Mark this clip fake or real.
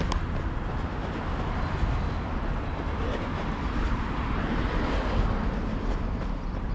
real